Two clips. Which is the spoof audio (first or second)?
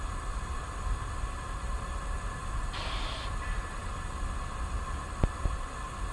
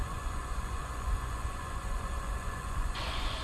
second